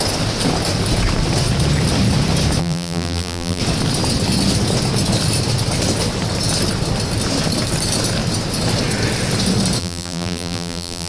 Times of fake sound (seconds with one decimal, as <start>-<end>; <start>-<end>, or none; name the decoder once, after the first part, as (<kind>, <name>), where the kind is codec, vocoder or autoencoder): 2.6-3.6 (vocoder, BigVGAN v2); 9.8-11.1